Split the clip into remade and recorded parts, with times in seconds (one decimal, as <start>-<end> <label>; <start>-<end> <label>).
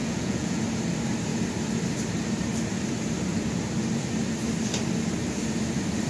0.0-0.6 remade; 0.6-6.1 recorded